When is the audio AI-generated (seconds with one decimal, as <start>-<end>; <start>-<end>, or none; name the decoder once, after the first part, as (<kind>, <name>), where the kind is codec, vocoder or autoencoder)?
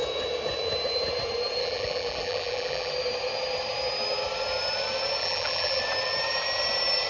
1.6-2.9 (vocoder, BigVGAN v2); 5.2-5.8